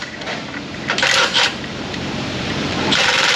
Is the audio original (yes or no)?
no